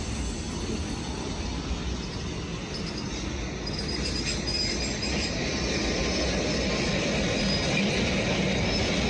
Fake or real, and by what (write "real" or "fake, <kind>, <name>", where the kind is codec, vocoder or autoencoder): real